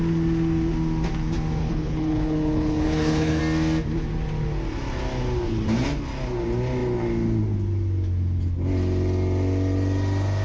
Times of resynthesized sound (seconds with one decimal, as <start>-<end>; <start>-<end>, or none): 1.6-3.4